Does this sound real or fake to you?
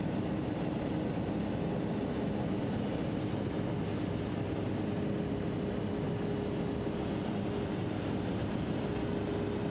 real